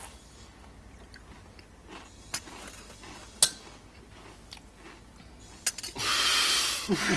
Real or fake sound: real